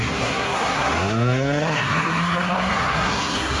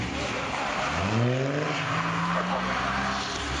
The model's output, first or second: first